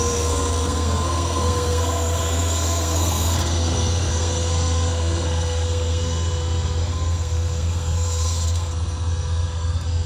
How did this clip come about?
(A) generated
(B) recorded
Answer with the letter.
A